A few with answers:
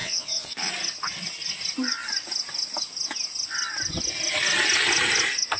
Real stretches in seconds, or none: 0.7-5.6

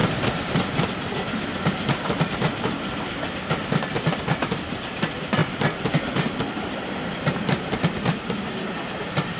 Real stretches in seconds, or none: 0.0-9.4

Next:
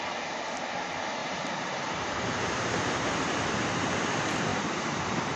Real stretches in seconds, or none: 0.0-1.2; 4.0-4.5

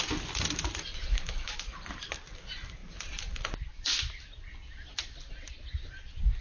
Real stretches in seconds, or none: 0.0-6.4